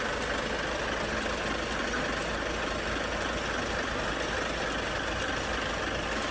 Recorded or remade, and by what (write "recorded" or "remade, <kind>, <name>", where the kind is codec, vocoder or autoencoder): recorded